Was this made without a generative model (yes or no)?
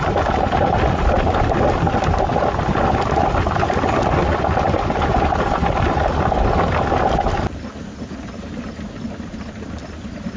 yes